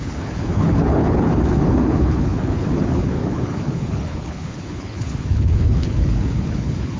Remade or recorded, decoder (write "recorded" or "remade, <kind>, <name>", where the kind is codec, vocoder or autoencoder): remade, codec, HILCodec